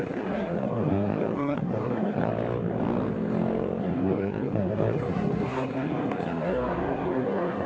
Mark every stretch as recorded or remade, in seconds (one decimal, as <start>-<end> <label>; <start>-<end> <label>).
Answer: 0.0-2.3 remade; 2.3-3.8 recorded; 3.8-7.7 remade